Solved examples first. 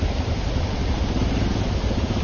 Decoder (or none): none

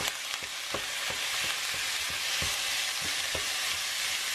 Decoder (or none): none